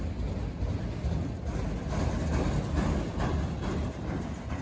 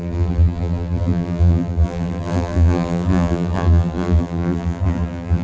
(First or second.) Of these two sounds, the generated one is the second